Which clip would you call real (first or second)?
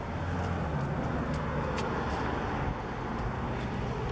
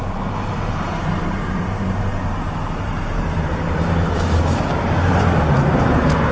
first